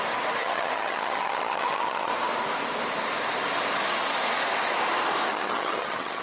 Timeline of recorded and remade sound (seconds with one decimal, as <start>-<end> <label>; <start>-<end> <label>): 0.0-0.4 recorded; 0.4-2.1 remade; 2.1-5.3 recorded; 5.3-6.2 remade